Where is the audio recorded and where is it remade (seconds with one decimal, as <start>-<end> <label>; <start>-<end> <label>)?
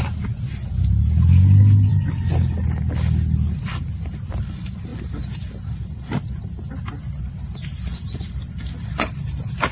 0.0-9.7 recorded